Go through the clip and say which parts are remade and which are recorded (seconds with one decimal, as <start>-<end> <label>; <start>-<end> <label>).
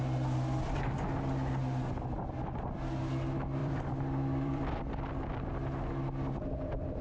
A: 0.0-3.6 recorded; 3.6-4.8 remade; 4.8-7.0 recorded